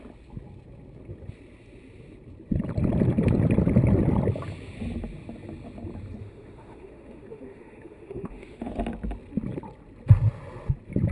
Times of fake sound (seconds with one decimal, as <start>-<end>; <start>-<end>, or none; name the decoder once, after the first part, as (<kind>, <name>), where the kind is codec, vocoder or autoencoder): 6.2-8.7 (autoencoder, DAC-VAE)